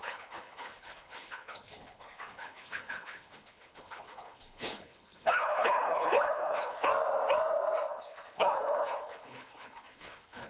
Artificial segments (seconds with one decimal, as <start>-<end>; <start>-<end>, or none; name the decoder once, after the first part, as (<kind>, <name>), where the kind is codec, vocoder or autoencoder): 0.0-6.9 (codec, HILCodec); 7.9-10.5